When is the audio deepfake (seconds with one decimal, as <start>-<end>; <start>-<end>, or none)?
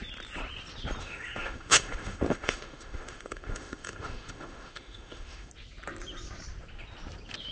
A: 1.0-5.5